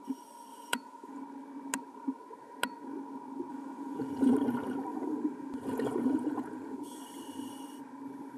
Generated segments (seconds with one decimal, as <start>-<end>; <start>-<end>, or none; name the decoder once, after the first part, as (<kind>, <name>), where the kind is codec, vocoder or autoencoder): 0.5-1.2 (vocoder, Vocos); 3.5-4.3; 4.9-7.0